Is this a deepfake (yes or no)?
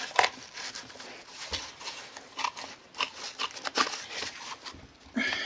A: no